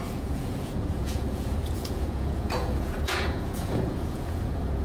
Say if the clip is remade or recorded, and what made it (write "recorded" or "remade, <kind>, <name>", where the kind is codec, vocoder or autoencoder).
remade, vocoder, Vocos